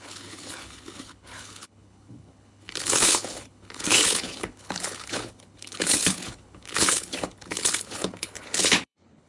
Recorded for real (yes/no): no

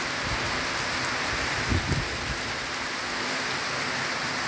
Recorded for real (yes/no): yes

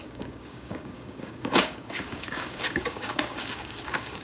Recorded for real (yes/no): no